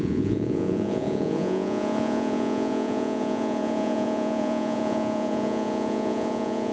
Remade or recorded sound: remade